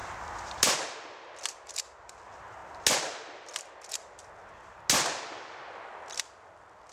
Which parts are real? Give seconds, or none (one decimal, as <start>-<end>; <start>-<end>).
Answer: 0.0-6.9

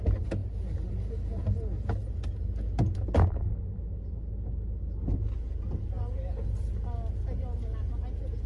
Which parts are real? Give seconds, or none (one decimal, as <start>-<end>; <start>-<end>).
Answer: 0.0-8.5